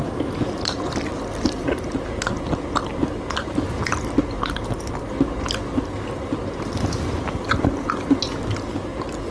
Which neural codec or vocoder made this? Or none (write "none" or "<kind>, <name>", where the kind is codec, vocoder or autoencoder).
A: none